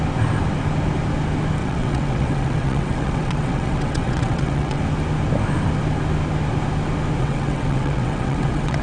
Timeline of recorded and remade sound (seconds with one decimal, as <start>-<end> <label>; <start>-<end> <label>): 0.0-1.6 recorded; 1.6-4.8 remade; 4.8-7.2 recorded; 7.2-8.8 remade

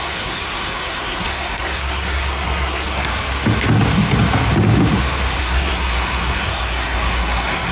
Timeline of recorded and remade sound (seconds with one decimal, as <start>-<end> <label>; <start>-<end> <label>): 0.0-3.1 remade; 3.1-5.4 recorded; 5.4-7.7 remade

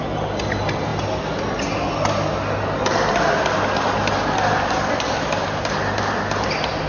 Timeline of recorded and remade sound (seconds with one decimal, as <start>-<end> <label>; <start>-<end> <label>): 0.0-6.9 recorded

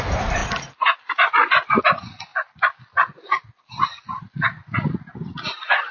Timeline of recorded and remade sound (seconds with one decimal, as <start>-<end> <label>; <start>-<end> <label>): 0.0-5.9 recorded

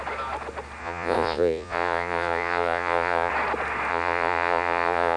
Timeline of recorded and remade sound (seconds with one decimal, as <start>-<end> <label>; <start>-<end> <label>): 0.0-0.8 recorded; 0.8-3.3 remade; 3.3-3.9 recorded; 3.9-5.2 remade

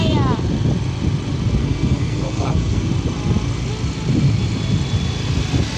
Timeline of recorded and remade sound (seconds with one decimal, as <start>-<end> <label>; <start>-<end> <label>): 0.0-1.6 recorded; 1.6-2.9 remade; 2.9-5.8 recorded